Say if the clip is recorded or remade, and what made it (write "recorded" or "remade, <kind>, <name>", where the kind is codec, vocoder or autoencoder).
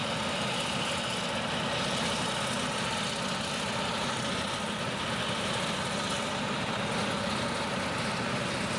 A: recorded